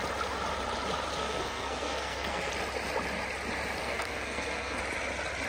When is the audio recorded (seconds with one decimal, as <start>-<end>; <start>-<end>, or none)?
0.0-1.2; 2.5-3.8; 4.8-5.5